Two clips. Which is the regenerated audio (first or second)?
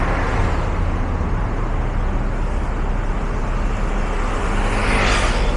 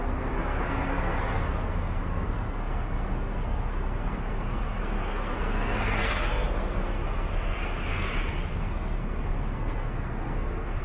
second